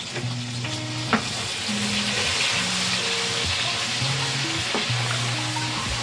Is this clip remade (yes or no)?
no